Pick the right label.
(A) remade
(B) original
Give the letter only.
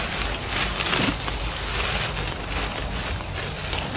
B